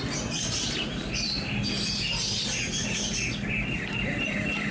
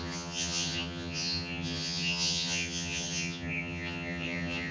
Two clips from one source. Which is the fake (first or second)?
second